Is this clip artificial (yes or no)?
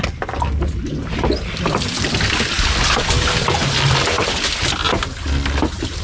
no